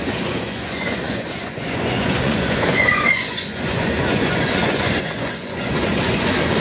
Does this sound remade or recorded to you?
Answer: remade